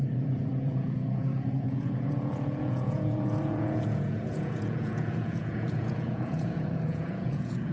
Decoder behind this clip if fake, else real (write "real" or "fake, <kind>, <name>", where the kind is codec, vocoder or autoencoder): fake, vocoder, Vocos